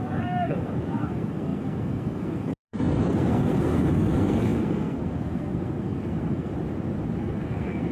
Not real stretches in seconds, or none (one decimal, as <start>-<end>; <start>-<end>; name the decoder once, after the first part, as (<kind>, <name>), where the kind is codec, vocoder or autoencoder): 0.0-6.5 (codec, SNAC); 7.2-7.9